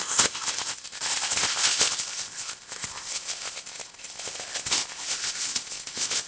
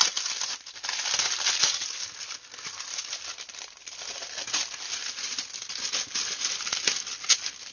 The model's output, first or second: first